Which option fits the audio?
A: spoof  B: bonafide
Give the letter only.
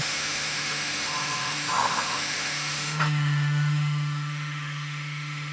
A